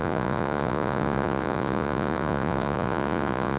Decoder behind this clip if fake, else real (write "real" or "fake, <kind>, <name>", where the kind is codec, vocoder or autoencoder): fake, vocoder, Vocos